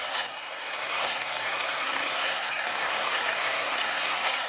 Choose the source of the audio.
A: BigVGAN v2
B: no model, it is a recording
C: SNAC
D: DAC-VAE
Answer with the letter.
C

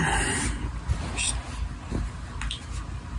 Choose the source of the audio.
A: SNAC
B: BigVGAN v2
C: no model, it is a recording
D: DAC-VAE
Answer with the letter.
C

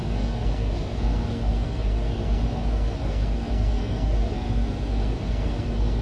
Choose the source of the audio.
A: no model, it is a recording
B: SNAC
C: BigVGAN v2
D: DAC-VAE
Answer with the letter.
B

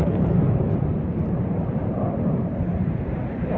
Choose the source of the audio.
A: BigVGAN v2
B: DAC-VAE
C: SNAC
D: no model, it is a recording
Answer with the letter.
A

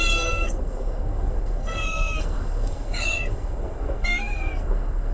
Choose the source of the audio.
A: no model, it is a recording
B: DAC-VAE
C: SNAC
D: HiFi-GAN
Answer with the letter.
C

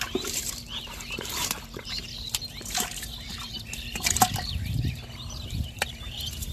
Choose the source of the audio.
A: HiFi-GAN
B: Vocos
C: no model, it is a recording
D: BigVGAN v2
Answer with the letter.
D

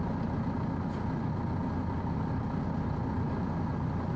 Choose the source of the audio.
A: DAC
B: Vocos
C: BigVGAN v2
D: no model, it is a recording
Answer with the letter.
D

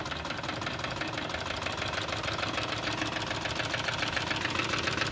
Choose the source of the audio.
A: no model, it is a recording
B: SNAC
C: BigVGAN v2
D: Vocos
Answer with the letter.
A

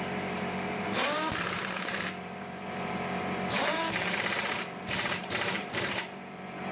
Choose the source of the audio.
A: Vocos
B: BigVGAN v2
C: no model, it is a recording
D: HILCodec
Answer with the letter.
B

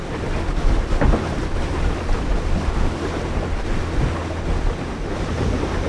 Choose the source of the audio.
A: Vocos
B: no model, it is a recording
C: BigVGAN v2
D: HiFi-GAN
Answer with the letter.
B